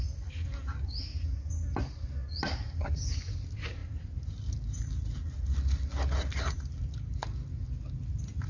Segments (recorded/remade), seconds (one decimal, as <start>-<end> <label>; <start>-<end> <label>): 0.0-8.5 recorded